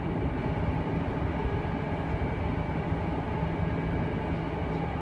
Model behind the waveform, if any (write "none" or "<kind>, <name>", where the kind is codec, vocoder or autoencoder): none